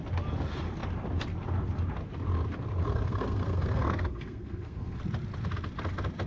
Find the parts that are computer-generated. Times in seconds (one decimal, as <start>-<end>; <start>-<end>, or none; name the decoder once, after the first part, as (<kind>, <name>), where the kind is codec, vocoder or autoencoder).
2.8-5.0 (codec, SNAC)